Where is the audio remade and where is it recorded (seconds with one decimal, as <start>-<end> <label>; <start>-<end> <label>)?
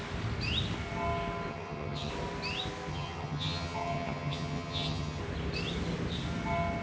0.0-1.5 recorded; 1.5-2.1 remade; 2.1-2.9 recorded; 2.9-5.2 remade; 5.2-6.8 recorded